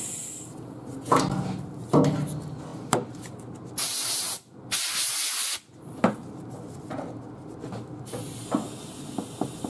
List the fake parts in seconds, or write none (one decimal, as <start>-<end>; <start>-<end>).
2.7-3.2